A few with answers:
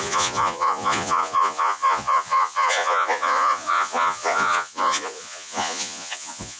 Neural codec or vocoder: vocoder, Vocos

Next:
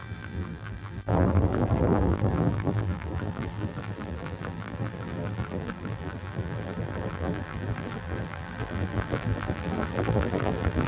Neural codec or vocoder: vocoder, BigVGAN v2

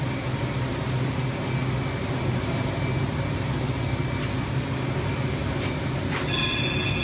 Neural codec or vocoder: none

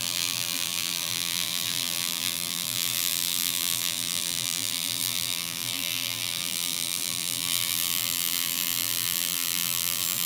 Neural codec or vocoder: vocoder, BigVGAN v2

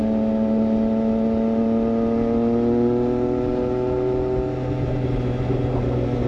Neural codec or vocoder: none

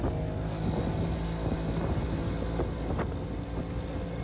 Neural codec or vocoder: none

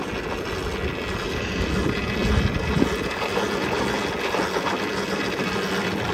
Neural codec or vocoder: none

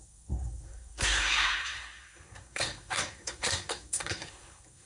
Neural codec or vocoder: codec, SNAC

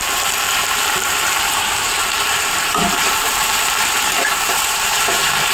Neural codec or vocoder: vocoder, BigVGAN v2